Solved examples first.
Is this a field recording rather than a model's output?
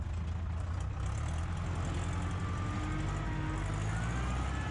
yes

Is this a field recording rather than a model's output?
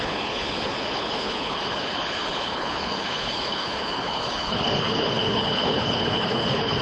no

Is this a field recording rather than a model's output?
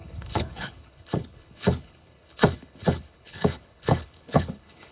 no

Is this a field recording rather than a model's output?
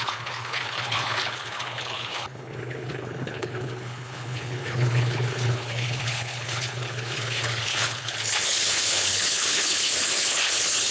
no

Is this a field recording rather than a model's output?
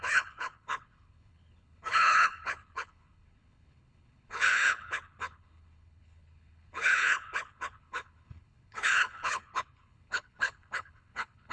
no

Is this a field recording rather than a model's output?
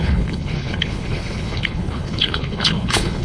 no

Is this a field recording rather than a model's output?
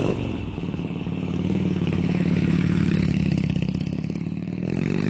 no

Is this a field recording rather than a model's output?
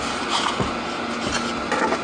yes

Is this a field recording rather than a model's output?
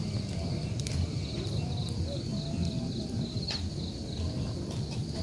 yes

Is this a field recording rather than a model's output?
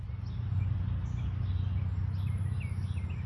yes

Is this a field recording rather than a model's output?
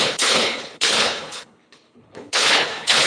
no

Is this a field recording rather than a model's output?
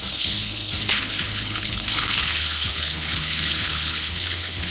no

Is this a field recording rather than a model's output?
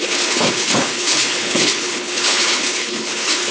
no